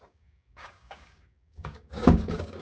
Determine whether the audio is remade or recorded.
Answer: remade